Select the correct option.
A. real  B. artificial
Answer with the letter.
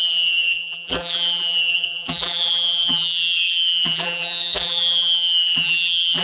B